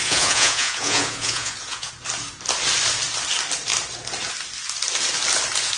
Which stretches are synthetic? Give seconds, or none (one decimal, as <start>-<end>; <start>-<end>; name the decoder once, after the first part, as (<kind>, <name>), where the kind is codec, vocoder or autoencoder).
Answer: 0.0-1.9 (vocoder, Vocos)